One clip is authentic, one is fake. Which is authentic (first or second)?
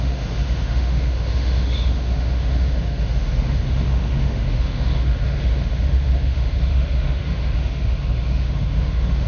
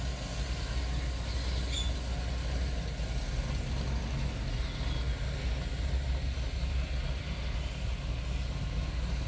second